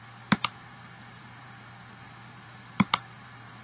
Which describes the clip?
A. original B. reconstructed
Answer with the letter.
B